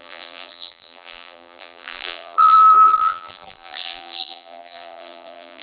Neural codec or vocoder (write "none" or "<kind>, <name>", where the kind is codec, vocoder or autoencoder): vocoder, BigVGAN v2